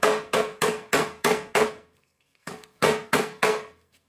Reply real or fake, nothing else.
fake